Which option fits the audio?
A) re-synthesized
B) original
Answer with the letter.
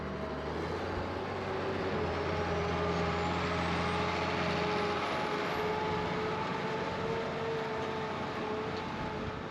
B